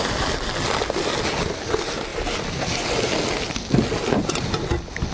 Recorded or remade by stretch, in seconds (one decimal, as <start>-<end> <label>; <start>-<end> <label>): 0.0-5.1 recorded